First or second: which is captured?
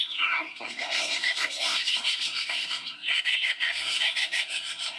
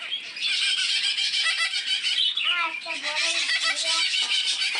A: second